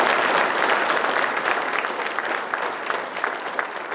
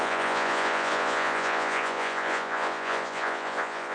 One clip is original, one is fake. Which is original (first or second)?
first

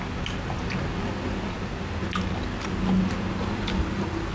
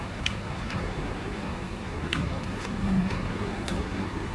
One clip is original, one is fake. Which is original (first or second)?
first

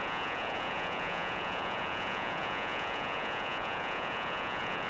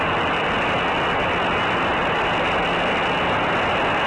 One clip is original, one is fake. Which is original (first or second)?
second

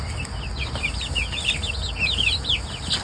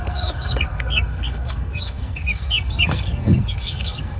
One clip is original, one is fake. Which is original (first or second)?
first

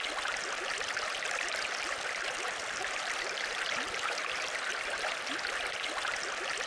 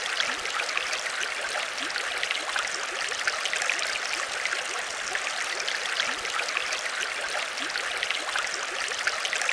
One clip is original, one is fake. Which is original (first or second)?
second